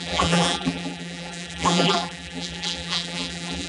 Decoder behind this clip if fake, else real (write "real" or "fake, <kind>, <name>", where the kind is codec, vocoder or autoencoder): fake, vocoder, BigVGAN v2